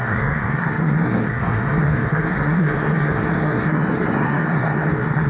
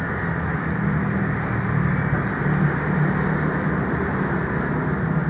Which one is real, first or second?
second